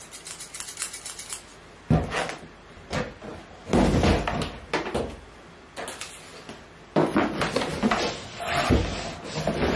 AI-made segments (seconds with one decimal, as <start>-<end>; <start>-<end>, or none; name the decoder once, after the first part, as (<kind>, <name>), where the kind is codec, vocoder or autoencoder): none